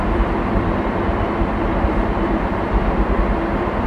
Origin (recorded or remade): remade